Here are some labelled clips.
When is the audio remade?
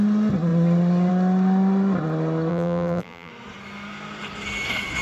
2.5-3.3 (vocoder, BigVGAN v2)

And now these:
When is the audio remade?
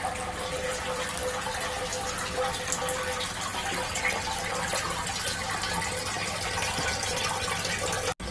none